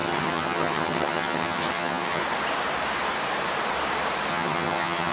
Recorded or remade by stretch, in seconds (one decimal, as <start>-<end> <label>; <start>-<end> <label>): 0.0-2.2 remade; 2.2-4.3 recorded; 4.3-5.1 remade